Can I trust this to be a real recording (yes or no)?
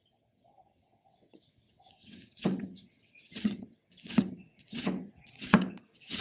no